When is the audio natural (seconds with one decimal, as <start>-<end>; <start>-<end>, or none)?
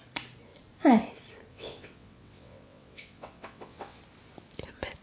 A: 0.0-1.5; 4.0-5.0